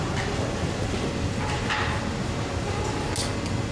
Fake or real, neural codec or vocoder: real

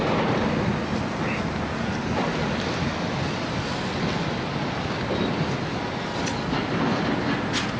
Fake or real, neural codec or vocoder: real